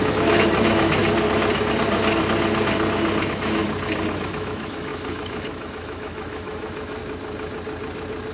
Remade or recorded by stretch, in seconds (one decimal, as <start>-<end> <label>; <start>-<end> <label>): 0.0-1.0 remade; 1.0-3.2 recorded; 3.2-3.6 remade; 3.6-4.1 recorded; 4.1-7.0 remade; 7.0-8.3 recorded